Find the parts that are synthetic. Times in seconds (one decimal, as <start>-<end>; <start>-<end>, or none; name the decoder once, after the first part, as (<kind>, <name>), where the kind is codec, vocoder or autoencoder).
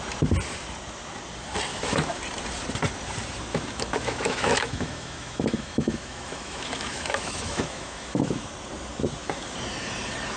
1.7-2.2 (autoencoder, DAC-VAE); 3.5-8.5